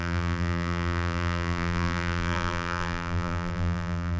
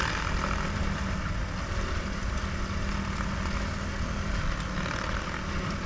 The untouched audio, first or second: second